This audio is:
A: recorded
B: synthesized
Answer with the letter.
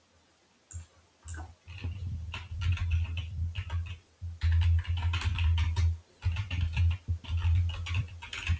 A